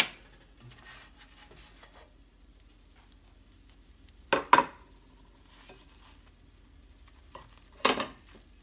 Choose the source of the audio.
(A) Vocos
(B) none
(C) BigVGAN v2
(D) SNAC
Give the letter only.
B